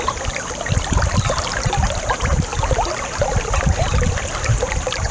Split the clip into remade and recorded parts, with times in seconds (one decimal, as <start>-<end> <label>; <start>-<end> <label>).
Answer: 0.0-5.1 recorded

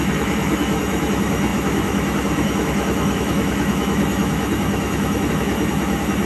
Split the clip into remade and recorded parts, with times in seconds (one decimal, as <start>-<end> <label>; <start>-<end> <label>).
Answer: 0.0-6.3 remade